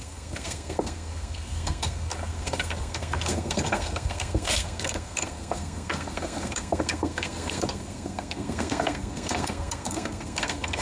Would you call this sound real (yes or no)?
no